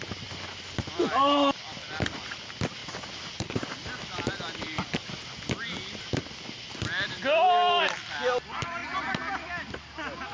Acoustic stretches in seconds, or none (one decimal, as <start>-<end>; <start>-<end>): 0.0-10.3